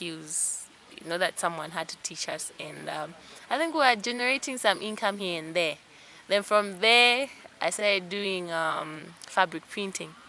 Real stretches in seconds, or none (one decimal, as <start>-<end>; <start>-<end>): 0.0-0.4; 5.2-7.8; 9.0-10.3